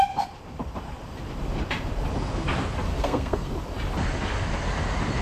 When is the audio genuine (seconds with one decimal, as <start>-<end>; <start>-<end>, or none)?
0.0-2.9; 3.5-5.2